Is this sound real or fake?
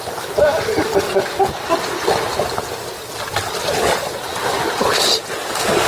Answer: real